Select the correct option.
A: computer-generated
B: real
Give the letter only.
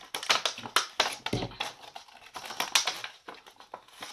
B